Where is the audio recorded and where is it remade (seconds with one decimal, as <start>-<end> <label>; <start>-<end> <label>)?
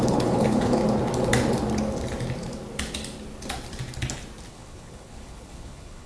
0.0-0.8 remade; 0.8-4.5 recorded; 4.5-6.1 remade